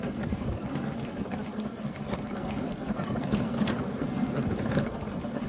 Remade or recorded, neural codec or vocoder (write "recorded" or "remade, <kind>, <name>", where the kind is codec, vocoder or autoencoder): remade, codec, SNAC